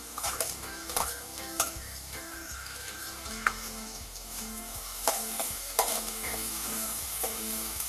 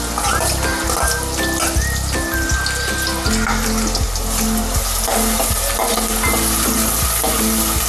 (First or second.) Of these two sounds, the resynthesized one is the first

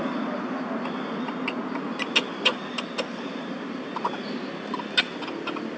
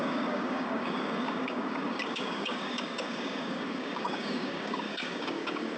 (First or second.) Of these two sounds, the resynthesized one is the second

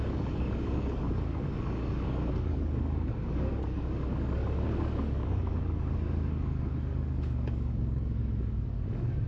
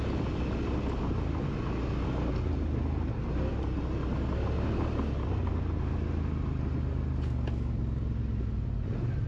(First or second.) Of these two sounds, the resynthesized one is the first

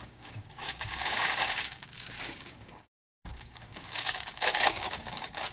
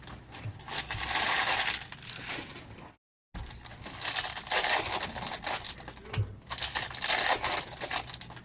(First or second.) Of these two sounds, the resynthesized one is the first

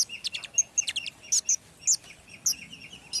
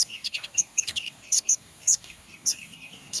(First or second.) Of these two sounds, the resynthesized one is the second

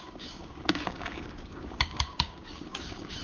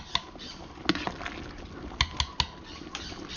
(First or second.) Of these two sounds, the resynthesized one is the first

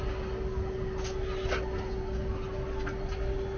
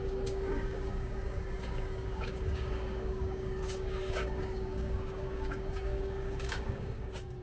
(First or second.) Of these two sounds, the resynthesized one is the second